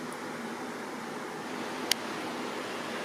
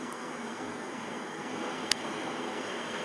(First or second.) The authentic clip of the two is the first